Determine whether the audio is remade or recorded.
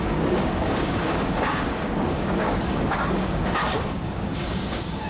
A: remade